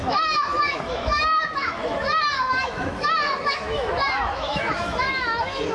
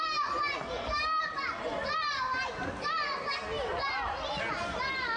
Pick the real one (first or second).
second